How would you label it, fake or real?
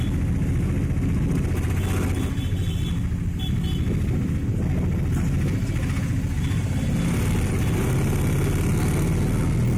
real